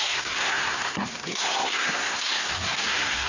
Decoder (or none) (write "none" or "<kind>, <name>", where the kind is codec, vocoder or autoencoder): codec, SNAC